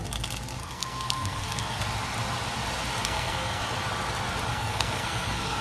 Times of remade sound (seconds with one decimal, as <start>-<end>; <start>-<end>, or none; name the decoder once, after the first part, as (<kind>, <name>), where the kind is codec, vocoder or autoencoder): 0.6-1.8 (codec, SNAC); 3.0-3.6; 4.5-5.6